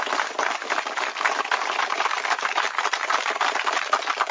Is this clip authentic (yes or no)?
yes